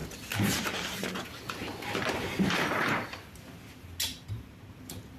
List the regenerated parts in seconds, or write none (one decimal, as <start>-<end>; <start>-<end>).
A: 0.5-1.7; 4.3-5.2